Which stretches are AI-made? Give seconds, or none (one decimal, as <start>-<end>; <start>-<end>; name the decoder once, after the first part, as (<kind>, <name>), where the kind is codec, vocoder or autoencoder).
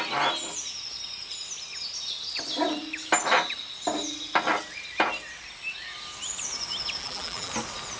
7.0-7.5 (vocoder, BigVGAN v2)